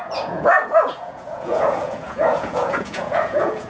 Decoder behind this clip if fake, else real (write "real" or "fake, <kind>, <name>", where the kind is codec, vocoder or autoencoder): fake, vocoder, Vocos